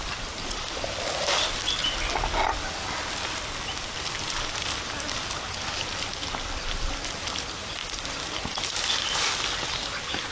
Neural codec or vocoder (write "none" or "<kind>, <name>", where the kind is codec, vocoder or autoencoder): none